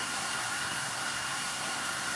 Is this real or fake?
fake